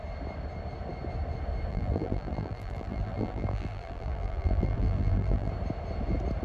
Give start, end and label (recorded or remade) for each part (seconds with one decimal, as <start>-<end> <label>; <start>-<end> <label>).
0.0-1.7 recorded; 1.7-5.5 remade; 5.5-6.4 recorded